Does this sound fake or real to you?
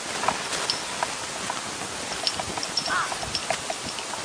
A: real